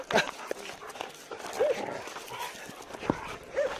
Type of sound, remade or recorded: recorded